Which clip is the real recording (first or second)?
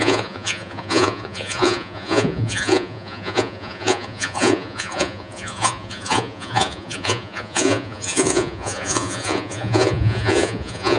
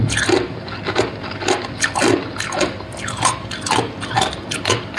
second